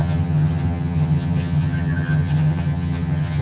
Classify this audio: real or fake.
fake